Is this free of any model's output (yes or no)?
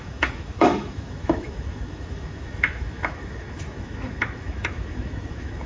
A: no